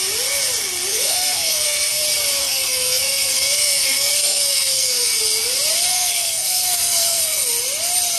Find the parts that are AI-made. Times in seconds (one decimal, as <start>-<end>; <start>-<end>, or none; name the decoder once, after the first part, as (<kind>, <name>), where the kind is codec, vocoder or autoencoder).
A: 0.9-2.0 (codec, SNAC); 2.4-5.2; 5.9-7.5